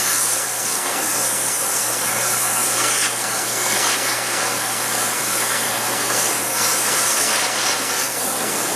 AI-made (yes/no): yes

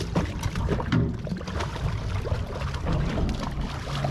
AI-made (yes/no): no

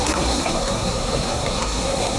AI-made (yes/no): yes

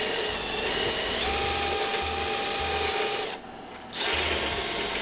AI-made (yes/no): no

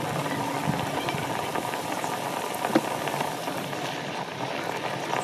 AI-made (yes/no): no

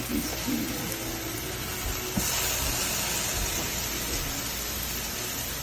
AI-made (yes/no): no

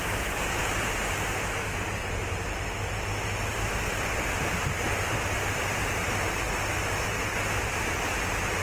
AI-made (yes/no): no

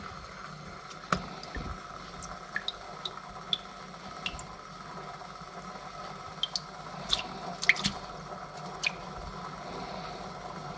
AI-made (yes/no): no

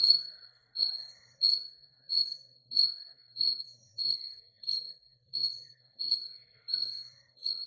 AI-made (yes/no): yes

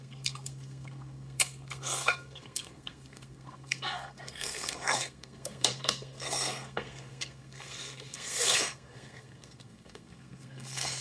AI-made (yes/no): yes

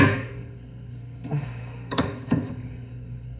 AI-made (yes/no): yes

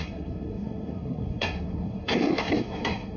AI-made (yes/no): yes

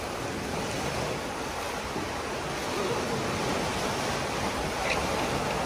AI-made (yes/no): no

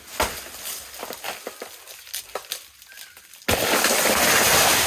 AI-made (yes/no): no